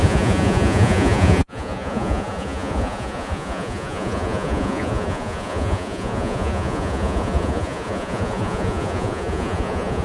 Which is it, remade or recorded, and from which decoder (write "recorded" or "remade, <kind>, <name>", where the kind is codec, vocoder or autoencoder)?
remade, vocoder, Vocos